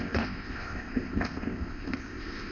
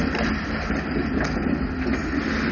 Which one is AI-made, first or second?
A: first